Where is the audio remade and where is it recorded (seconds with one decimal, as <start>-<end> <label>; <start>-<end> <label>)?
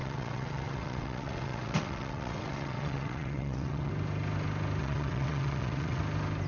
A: 0.0-3.9 remade; 3.9-4.8 recorded; 4.8-6.0 remade; 6.0-6.5 recorded